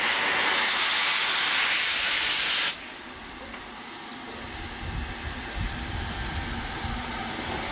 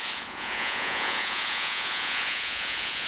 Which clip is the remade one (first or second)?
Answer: second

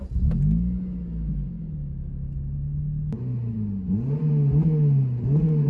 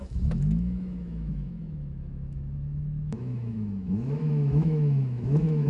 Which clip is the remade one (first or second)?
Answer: second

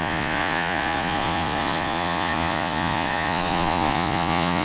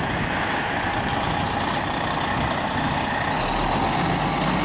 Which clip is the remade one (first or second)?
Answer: first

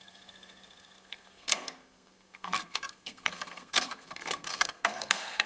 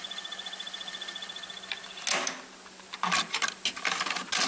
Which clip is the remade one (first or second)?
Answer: first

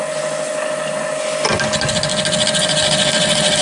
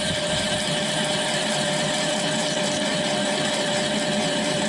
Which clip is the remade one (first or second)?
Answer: second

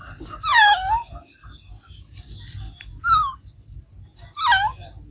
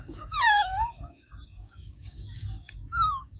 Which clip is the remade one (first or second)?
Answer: second